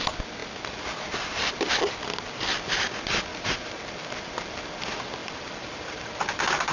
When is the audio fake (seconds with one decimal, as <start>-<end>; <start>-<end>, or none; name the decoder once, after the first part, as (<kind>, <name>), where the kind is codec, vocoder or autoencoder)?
3.3-4.6 (vocoder, BigVGAN v2); 5.2-6.1